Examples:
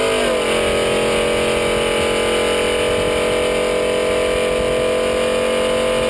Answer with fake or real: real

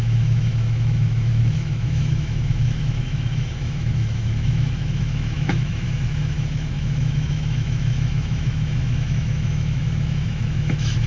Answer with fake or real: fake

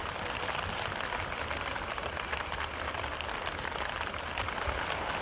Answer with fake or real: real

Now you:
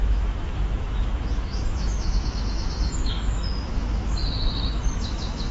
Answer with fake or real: fake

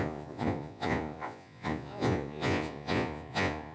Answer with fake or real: fake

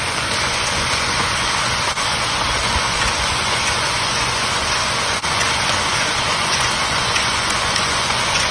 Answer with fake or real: fake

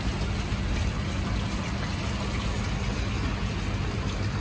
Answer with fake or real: real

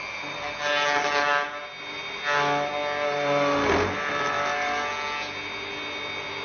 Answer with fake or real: real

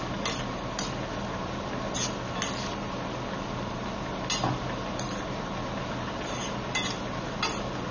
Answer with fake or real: real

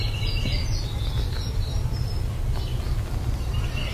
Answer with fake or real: real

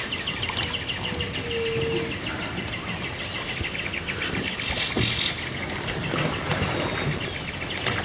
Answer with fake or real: real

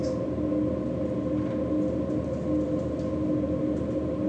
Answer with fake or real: real